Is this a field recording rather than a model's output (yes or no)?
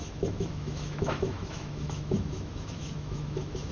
no